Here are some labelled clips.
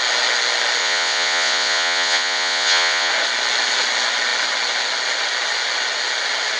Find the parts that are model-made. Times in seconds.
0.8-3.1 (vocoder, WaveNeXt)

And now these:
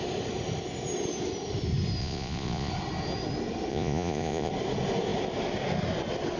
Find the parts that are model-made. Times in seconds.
2.0-2.7 (vocoder, Vocos); 3.7-4.5

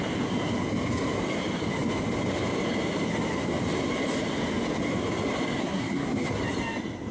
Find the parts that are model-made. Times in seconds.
5.6-6.4 (codec, SNAC)

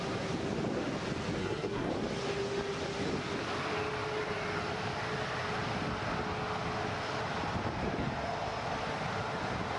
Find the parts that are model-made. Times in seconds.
1.4-1.9 (codec, SNAC)

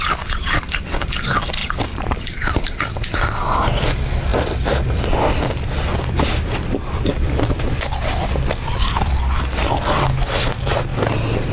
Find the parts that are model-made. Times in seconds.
1.6-2.6 (vocoder, BigVGAN v2); 4.3-9.4; 10.9-11.5

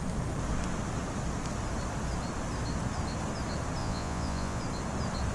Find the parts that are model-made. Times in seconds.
3.8-4.6 (vocoder, Vocos)

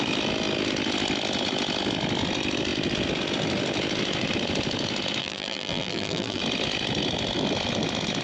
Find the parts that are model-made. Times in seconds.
5.2-6.4 (vocoder, BigVGAN v2)

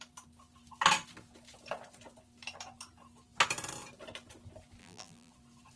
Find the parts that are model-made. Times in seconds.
4.8-5.3 (vocoder, BigVGAN v2)